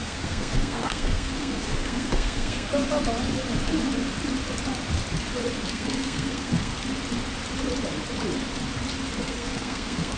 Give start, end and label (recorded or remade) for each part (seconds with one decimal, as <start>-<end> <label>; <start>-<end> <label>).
0.0-2.7 remade; 2.7-5.7 recorded; 5.7-6.7 remade; 6.7-9.2 recorded; 9.2-10.2 remade